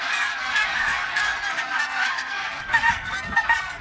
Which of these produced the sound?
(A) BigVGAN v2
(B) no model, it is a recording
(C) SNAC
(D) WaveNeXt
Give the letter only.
C